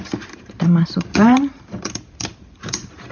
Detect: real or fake fake